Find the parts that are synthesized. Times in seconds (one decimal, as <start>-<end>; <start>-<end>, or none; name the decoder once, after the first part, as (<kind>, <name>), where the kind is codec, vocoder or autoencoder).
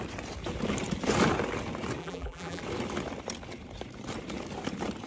2.0-2.6 (vocoder, BigVGAN v2)